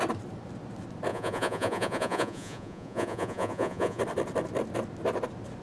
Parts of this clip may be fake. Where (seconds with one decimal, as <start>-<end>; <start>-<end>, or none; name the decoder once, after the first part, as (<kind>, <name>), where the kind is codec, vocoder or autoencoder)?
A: 1.1-4.0 (vocoder, Vocos)

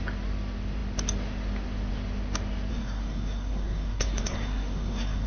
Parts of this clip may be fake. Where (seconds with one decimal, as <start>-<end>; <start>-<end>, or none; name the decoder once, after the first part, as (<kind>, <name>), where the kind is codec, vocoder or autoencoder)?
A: 2.7-5.3 (codec, SNAC)